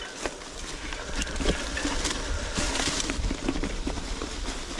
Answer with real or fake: real